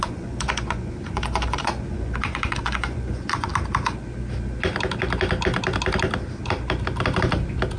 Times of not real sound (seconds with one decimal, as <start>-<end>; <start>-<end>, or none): 0.0-3.5